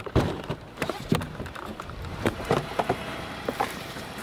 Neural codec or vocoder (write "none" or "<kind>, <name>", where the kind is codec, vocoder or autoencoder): vocoder, BigVGAN v2